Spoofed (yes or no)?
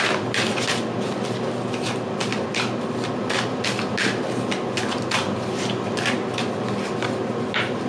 no